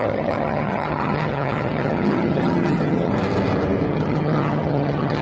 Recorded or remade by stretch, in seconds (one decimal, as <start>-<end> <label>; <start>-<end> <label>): 0.0-3.1 remade; 3.1-3.9 recorded; 3.9-5.2 remade